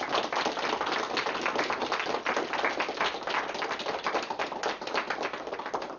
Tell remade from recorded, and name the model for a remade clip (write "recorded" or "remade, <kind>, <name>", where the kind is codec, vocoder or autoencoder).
recorded